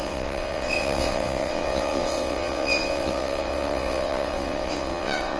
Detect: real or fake fake